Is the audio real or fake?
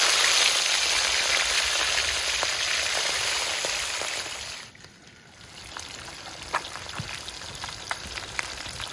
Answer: real